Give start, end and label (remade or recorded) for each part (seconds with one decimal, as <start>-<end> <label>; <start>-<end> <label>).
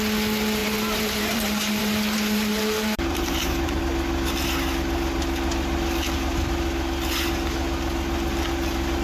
0.0-0.6 recorded; 0.6-3.8 remade; 3.8-9.0 recorded